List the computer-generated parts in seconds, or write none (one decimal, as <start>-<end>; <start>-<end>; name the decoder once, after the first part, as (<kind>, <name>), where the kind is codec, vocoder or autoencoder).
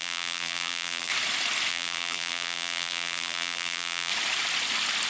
0.0-1.1 (vocoder, BigVGAN v2); 1.7-4.1